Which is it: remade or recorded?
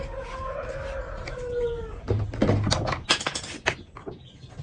recorded